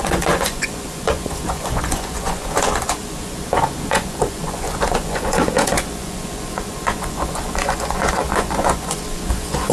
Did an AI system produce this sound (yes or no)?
yes